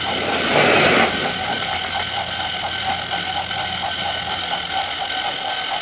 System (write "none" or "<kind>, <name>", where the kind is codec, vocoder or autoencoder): none